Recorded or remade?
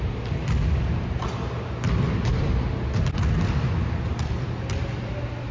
recorded